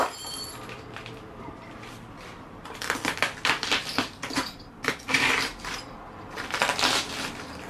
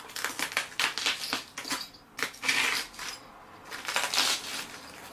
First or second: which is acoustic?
second